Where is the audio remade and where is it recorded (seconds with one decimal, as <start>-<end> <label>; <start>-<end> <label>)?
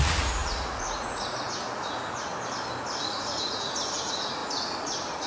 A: 0.0-2.3 remade; 2.3-3.0 recorded; 3.0-5.3 remade